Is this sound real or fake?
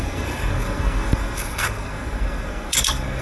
fake